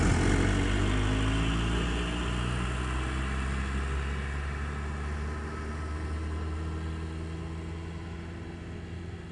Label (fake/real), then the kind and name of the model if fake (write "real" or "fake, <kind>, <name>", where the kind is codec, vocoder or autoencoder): real